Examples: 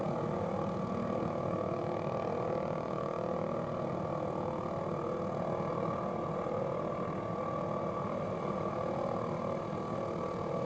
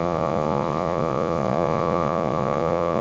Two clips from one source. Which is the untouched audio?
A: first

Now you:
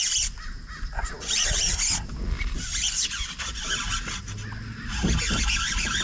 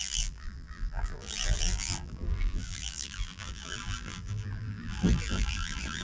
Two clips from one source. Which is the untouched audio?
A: first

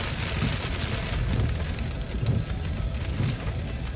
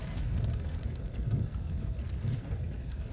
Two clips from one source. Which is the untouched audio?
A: first